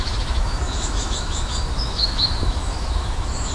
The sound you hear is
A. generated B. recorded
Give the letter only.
A